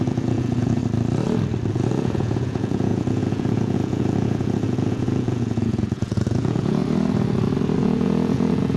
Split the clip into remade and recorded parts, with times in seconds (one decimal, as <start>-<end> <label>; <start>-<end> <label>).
0.0-0.8 remade; 0.8-1.7 recorded; 1.7-6.8 remade; 6.8-7.8 recorded; 7.8-8.8 remade